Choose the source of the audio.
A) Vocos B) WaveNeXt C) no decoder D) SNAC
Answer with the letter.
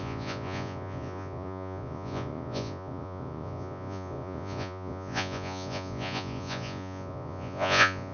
A